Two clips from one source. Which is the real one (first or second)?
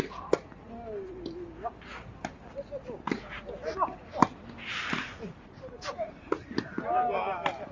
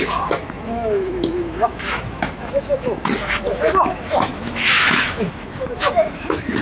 first